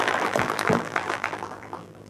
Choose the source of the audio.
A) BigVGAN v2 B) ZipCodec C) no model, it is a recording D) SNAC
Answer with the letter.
A